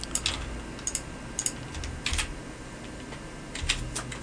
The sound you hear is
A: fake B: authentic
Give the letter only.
B